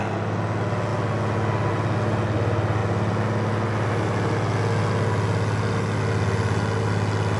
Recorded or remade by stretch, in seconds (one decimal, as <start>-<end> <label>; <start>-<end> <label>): 0.0-7.4 recorded